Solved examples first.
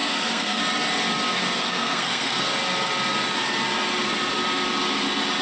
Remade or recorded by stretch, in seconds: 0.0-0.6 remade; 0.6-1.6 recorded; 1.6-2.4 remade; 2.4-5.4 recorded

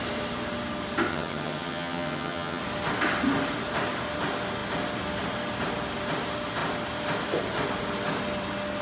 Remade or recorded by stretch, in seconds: 0.0-1.1 recorded; 1.1-2.6 remade; 2.6-8.8 recorded